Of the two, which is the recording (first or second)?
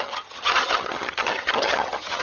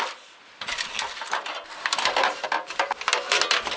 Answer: second